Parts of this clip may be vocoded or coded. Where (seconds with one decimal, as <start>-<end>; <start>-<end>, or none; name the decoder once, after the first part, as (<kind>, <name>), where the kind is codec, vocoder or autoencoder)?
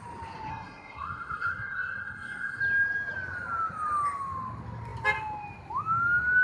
0.5-2.6 (codec, SNAC)